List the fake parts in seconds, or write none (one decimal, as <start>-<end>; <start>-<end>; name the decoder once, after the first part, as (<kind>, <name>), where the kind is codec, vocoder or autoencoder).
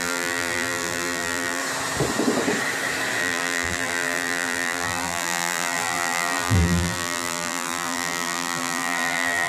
0.0-1.6 (vocoder, BigVGAN v2); 3.2-9.5